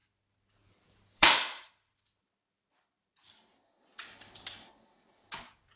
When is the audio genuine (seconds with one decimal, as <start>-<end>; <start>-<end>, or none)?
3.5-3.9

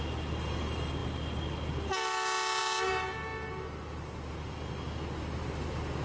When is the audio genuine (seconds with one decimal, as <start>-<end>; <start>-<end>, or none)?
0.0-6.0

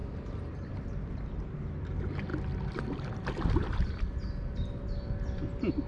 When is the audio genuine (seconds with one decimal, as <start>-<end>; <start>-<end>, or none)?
0.7-5.9

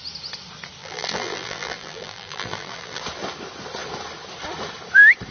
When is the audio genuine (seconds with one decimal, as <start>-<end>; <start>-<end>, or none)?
0.0-0.8; 3.0-5.3

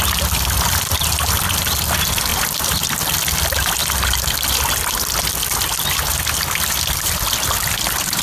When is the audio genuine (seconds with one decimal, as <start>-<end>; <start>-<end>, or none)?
0.0-2.3; 2.9-8.2

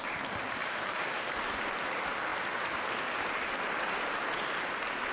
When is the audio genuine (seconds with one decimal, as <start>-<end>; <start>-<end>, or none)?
0.0-0.6; 1.9-5.1